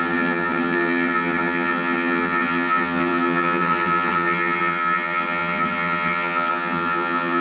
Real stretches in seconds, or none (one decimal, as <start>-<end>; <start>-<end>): none